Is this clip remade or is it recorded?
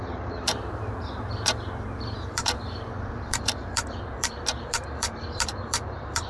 remade